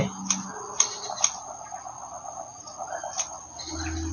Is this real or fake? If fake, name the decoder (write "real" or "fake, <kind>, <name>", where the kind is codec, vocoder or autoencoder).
real